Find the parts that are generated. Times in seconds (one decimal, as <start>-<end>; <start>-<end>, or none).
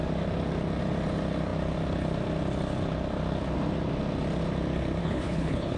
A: 5.0-5.8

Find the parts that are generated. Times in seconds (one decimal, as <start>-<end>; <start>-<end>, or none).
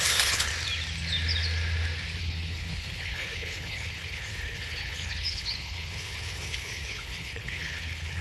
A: 0.0-0.5; 2.2-8.2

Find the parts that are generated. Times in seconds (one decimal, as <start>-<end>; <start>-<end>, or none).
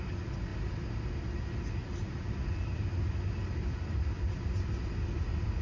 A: none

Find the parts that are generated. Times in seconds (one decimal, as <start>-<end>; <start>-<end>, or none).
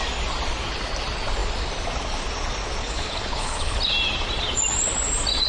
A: 2.8-3.8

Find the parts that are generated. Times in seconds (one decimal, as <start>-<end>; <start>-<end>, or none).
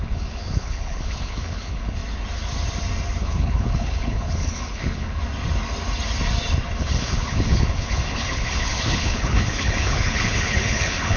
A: 0.0-2.0; 3.2-5.2; 6.8-11.2